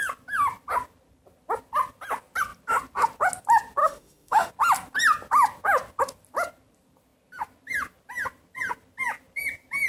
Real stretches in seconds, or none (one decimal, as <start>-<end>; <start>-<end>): 0.0-3.8; 4.5-9.9